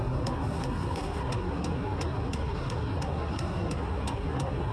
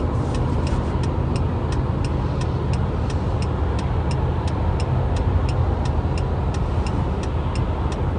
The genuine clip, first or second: second